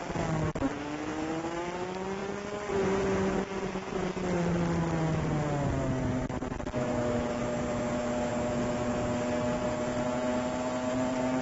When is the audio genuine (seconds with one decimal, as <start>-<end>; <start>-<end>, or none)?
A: 0.0-6.4; 7.4-11.4